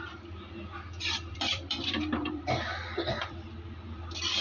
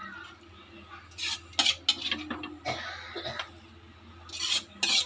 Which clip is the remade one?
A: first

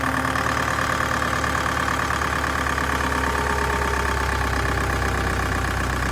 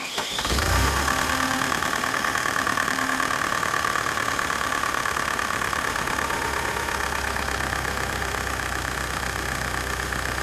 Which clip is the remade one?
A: second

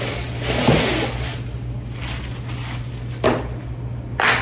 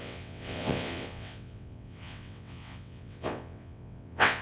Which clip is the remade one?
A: second